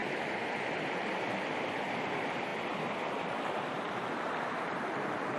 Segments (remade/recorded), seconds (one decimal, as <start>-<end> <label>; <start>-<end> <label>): 0.0-5.4 remade